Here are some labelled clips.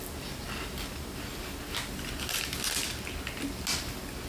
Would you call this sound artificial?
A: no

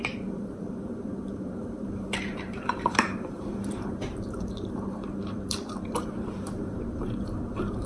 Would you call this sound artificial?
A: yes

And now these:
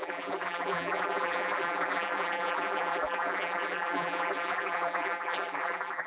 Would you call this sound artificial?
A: yes